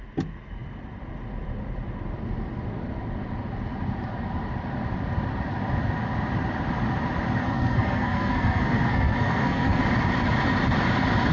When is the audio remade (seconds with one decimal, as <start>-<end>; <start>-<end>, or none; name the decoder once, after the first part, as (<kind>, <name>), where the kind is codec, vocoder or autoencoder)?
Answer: 7.4-9.8 (codec, SNAC)